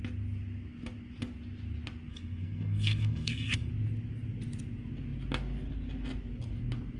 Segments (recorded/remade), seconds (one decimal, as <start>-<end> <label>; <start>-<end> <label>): 0.0-2.1 recorded; 2.1-3.7 remade; 3.7-7.0 recorded